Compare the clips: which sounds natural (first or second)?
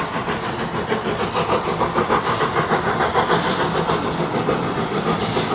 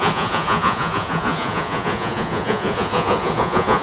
first